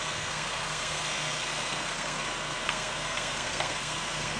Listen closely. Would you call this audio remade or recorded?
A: remade